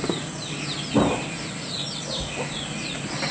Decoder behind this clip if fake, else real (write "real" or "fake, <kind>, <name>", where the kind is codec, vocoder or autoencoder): real